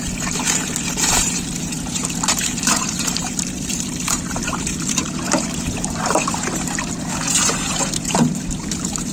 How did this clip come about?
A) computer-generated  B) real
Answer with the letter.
A